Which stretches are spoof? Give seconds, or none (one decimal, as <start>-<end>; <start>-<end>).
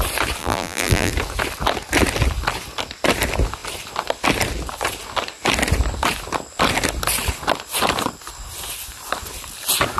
0.4-1.1